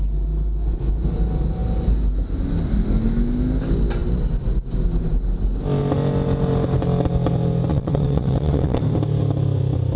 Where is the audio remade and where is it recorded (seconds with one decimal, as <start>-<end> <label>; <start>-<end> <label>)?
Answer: 0.0-7.7 recorded; 7.7-8.8 remade; 8.8-10.0 recorded